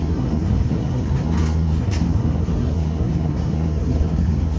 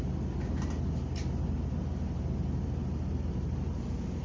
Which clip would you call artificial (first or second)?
first